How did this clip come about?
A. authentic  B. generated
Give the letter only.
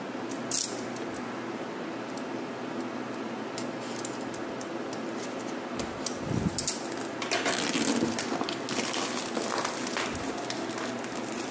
A